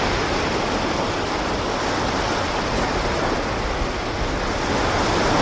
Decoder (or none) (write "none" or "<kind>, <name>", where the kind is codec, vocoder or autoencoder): none